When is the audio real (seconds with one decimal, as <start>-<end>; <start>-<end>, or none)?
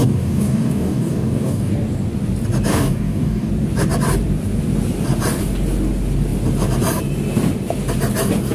1.7-2.7; 3.5-8.5